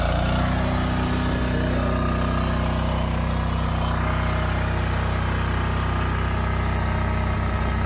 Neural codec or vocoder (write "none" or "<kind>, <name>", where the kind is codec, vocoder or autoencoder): none